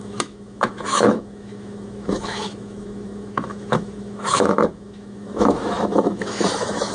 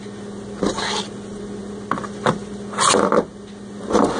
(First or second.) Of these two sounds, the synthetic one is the first